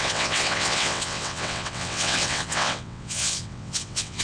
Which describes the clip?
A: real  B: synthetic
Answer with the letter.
B